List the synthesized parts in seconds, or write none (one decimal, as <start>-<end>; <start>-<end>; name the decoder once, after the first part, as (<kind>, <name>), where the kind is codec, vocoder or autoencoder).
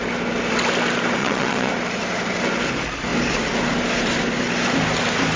1.2-1.7 (vocoder, WaveNeXt)